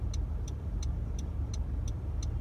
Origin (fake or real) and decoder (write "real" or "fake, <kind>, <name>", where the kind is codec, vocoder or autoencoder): real